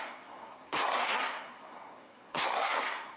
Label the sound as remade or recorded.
remade